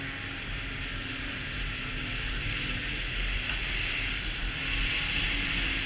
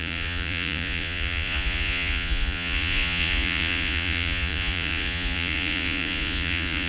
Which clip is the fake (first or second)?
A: second